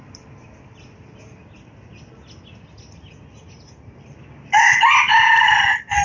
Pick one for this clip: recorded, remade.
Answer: recorded